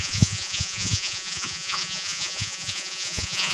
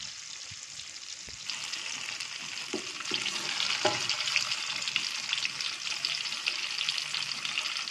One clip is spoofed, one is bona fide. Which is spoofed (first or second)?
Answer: first